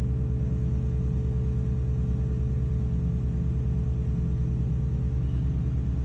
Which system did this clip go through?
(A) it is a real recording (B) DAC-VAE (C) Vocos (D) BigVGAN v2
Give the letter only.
A